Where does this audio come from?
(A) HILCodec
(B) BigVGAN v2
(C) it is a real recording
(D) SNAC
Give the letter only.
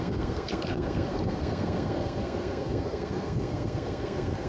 D